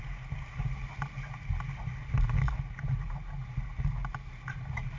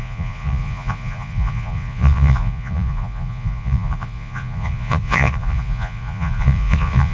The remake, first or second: second